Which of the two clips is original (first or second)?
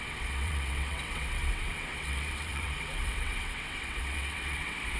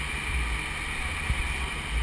second